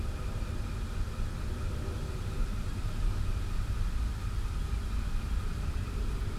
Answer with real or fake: real